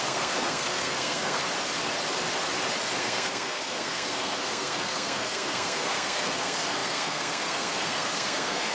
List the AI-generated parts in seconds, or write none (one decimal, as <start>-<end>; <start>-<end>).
0.0-1.4; 3.0-8.7